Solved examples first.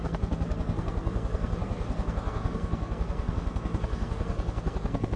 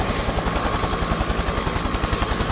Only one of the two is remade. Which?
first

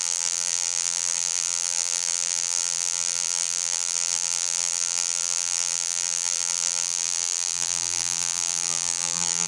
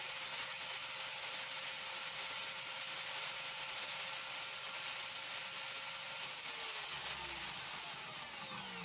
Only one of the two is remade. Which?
first